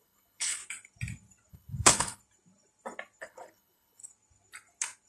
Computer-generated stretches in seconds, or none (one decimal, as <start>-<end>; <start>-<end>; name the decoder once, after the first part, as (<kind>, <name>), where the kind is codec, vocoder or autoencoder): 0.0-0.6 (codec, HILCodec); 1.5-2.2; 3.2-4.0